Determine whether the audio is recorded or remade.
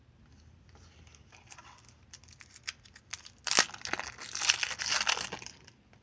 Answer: recorded